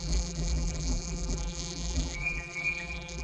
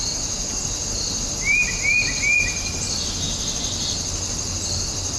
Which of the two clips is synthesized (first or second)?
first